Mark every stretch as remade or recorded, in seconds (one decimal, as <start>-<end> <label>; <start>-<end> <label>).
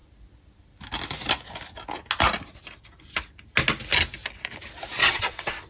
0.0-5.0 recorded; 5.0-5.7 remade